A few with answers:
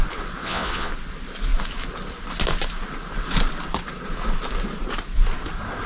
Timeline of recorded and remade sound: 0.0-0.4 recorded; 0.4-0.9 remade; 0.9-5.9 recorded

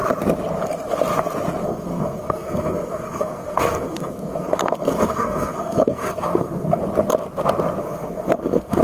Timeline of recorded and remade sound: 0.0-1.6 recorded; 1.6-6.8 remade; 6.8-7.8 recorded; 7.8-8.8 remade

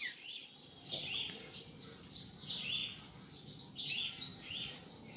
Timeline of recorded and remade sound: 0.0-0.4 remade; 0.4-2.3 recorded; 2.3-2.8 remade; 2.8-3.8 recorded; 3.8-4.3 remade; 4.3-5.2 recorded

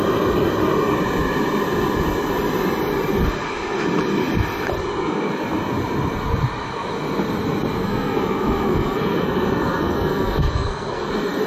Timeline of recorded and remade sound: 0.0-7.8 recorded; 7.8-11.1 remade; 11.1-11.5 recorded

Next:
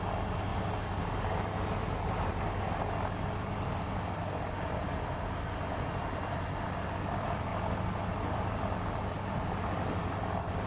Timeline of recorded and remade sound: 0.0-10.7 recorded